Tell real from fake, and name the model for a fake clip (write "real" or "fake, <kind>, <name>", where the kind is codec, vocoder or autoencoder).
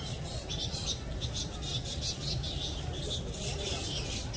real